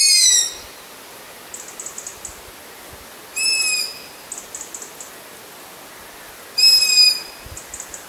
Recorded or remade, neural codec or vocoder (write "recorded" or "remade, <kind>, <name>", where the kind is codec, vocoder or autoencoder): recorded